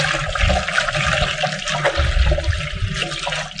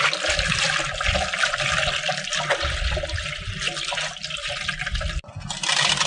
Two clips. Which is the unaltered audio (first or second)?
first